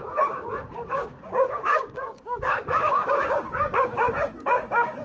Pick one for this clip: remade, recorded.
remade